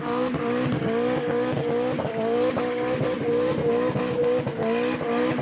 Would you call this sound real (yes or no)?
yes